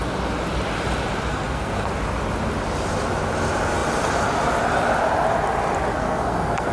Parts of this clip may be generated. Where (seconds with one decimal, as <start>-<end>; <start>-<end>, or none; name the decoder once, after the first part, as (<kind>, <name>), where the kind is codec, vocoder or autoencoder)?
1.3-1.9 (codec, SNAC); 5.9-6.7